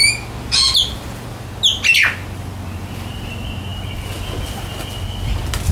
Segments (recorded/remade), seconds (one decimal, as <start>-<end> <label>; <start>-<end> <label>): 0.0-5.7 recorded